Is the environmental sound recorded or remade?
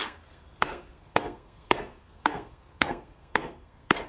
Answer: remade